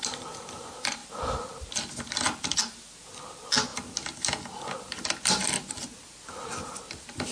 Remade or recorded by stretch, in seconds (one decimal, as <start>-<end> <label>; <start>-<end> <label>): 0.0-7.3 recorded